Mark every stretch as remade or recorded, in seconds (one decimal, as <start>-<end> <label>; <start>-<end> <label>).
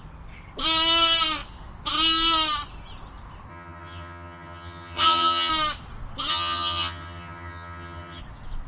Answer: 0.0-3.5 recorded; 3.5-5.5 remade; 5.5-6.3 recorded; 6.3-8.2 remade; 8.2-8.7 recorded